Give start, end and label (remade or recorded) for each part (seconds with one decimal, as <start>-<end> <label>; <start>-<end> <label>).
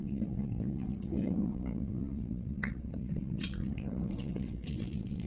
0.0-5.3 remade